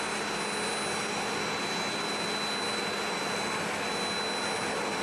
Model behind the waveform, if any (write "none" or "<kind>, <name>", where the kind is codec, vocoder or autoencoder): none